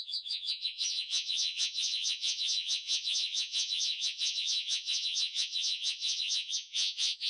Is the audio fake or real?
fake